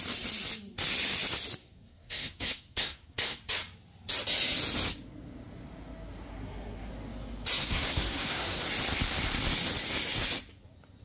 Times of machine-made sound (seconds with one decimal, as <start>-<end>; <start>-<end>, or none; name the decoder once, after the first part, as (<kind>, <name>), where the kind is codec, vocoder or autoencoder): 1.6-3.4 (codec, SNAC); 6.3-6.9; 7.6-8.6